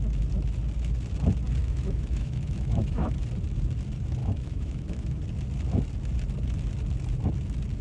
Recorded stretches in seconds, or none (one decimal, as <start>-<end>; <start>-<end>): 0.0-1.6; 3.2-4.2; 5.2-7.8